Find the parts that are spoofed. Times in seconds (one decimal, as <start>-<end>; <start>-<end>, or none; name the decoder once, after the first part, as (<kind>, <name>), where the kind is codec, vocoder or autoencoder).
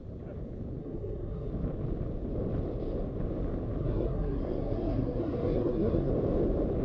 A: 0.8-1.5 (codec, SNAC); 3.8-6.1